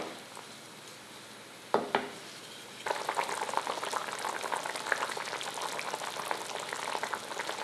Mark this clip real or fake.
real